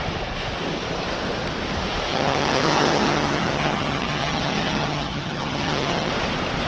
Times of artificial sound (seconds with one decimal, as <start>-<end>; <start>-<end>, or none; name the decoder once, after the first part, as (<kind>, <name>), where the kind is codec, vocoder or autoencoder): 2.1-6.1 (vocoder, HiFi-GAN)